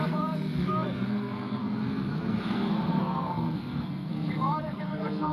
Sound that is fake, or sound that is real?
fake